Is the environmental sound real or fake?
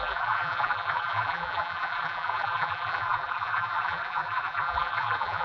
fake